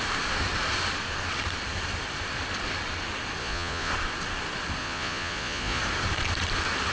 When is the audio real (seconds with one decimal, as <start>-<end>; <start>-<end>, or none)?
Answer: 0.0-3.4; 3.9-4.8; 5.8-6.9